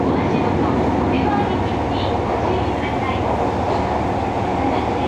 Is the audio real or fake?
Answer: real